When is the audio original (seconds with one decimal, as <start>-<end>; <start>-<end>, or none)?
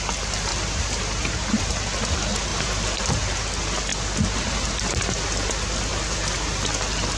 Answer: 0.0-0.5; 1.6-2.5; 3.1-5.9